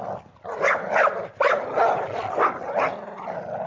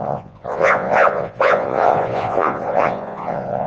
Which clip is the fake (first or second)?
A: second